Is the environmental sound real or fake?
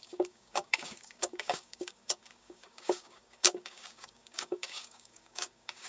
fake